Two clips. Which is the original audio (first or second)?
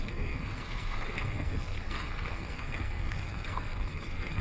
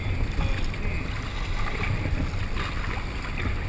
second